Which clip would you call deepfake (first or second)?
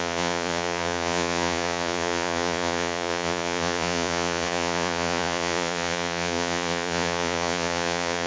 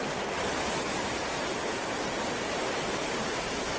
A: first